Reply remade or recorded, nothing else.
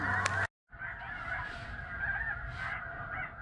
recorded